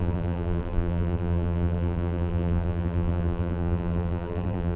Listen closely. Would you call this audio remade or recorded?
remade